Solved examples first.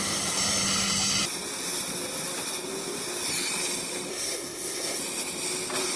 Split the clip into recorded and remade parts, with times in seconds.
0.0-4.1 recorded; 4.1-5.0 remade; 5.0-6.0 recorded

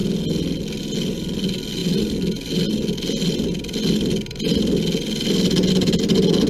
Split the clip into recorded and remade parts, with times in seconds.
0.0-6.5 recorded

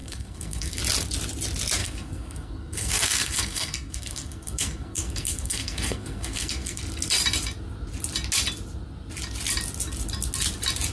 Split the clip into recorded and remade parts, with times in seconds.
0.0-0.8 remade; 0.8-1.8 recorded; 1.8-6.8 remade; 6.8-10.9 recorded

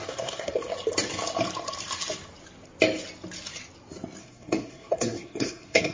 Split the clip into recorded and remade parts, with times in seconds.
0.0-0.7 remade; 0.7-4.2 recorded; 4.2-5.9 remade

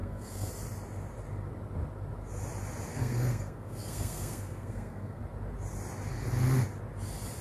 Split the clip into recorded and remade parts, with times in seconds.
0.0-0.5 remade; 0.5-2.9 recorded; 2.9-5.2 remade; 5.2-7.4 recorded

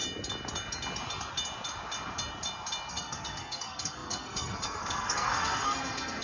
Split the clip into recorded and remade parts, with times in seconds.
0.0-2.9 recorded; 2.9-6.2 remade

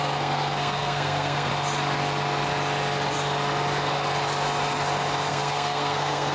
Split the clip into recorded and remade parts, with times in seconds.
0.0-1.5 remade; 1.5-5.3 recorded; 5.3-6.3 remade